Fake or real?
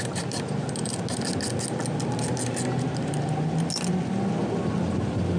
real